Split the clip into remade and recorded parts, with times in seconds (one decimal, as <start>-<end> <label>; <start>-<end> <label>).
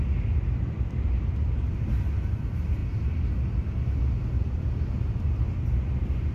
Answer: 0.0-6.3 recorded